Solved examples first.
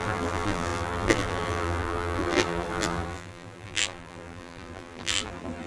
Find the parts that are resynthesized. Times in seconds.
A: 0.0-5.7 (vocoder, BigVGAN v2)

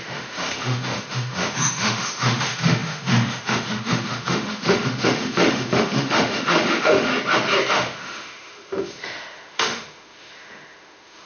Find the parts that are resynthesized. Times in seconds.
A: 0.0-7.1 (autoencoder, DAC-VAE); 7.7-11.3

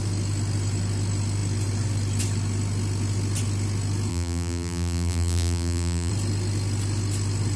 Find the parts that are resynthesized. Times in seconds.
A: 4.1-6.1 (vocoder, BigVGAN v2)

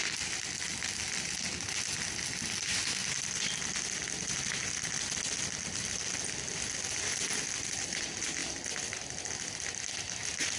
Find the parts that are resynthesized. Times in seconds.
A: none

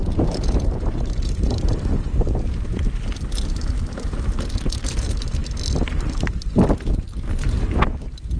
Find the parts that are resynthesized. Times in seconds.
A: 0.0-4.8 (vocoder, BigVGAN v2); 5.4-6.5

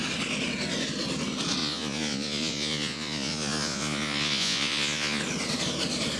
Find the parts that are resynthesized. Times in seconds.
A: 1.6-5.2 (vocoder, Vocos)

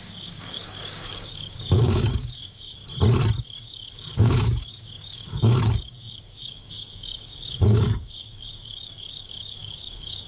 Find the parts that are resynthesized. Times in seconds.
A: 0.0-2.8 (codec, DAC); 3.4-10.3

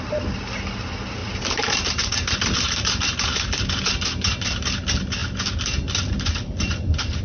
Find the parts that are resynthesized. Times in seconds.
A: 1.2-3.7 (vocoder, BigVGAN v2)